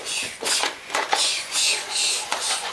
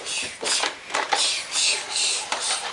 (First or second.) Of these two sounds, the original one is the second